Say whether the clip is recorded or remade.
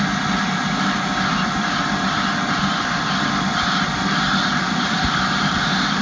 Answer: recorded